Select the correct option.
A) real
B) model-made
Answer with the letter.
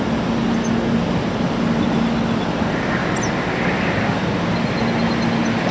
A